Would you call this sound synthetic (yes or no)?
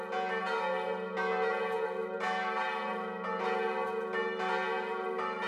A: no